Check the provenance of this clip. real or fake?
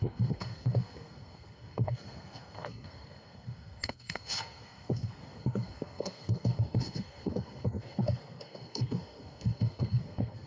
fake